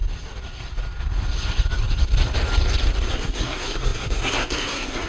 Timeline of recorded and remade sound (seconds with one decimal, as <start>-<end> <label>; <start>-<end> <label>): 0.0-3.1 recorded; 3.1-5.1 remade